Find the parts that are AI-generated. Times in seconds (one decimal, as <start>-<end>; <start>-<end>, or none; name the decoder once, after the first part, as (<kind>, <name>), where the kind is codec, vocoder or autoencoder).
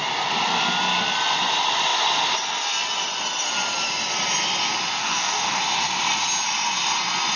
5.0-5.6 (codec, DAC)